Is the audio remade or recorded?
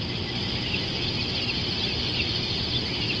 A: recorded